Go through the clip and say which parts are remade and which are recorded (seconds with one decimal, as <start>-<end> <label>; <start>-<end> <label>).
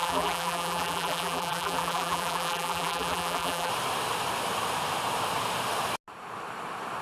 0.0-3.7 remade; 3.7-7.0 recorded